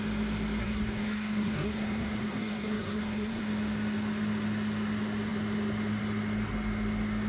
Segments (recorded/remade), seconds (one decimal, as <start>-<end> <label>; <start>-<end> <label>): 0.0-0.6 recorded; 0.6-3.4 remade; 3.4-7.3 recorded